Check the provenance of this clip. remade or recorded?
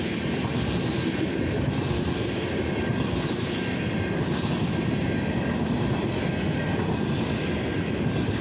recorded